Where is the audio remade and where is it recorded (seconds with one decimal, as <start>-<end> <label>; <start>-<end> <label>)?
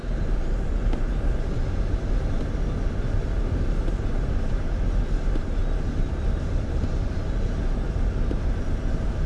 0.0-9.3 recorded